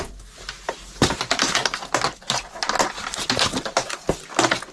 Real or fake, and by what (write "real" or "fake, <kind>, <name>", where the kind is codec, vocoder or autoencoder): real